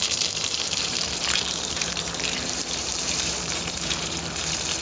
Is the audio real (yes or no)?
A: no